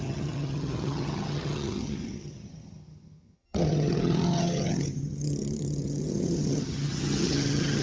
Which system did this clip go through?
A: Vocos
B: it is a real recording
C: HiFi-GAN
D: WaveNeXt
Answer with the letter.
C